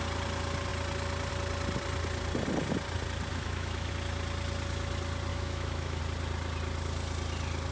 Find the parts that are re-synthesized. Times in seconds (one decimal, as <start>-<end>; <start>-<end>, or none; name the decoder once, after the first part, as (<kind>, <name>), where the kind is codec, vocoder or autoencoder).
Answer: 3.3-3.9 (autoencoder, DAC-VAE); 5.3-6.0